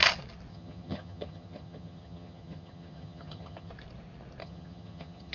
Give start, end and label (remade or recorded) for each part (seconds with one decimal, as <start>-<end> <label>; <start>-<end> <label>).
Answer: 0.0-0.5 recorded; 0.5-3.7 remade; 3.7-4.4 recorded; 4.4-5.3 remade

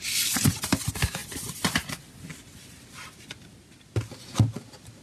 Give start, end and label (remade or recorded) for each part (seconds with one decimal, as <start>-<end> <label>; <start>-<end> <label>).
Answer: 0.0-5.0 recorded

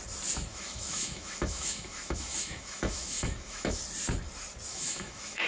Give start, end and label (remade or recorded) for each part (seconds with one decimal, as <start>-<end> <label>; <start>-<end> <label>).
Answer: 0.0-0.5 recorded; 0.5-3.8 remade; 3.8-4.7 recorded; 4.7-5.5 remade

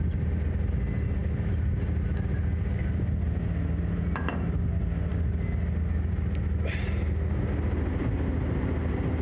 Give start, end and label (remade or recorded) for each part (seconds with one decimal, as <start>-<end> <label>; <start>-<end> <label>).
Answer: 0.0-9.2 recorded

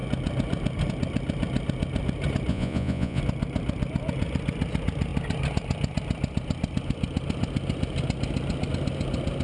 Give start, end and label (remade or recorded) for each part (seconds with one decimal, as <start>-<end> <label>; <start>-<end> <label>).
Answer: 0.0-2.5 recorded; 2.5-3.2 remade; 3.2-9.4 recorded

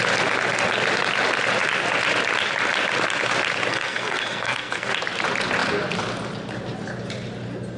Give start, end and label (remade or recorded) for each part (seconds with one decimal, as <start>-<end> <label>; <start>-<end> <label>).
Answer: 0.0-3.7 recorded; 3.7-4.9 remade; 4.9-7.8 recorded

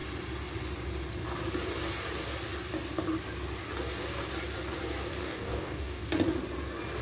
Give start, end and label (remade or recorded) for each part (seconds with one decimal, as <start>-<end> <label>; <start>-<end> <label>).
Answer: 0.0-5.2 recorded; 5.2-6.0 remade; 6.0-7.0 recorded